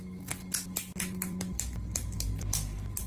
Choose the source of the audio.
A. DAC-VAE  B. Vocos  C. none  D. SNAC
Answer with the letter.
C